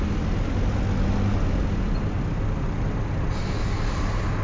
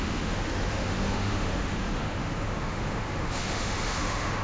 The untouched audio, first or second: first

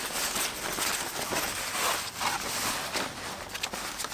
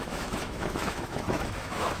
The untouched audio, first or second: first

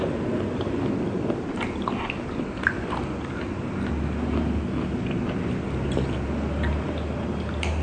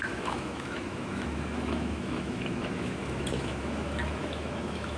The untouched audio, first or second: first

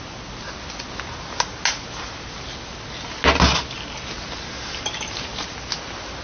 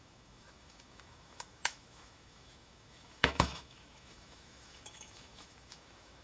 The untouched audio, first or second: first